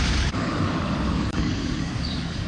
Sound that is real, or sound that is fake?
fake